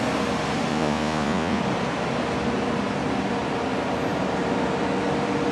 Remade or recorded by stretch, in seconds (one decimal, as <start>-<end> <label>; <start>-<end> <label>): 0.0-0.7 recorded; 0.7-1.6 remade; 1.6-5.5 recorded